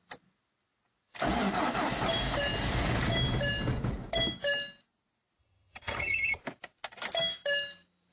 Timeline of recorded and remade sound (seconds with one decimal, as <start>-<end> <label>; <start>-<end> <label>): 0.0-5.4 recorded; 5.4-6.4 remade; 6.4-8.1 recorded